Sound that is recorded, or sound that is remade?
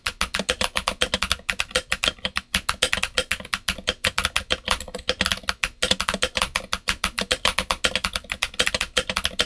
recorded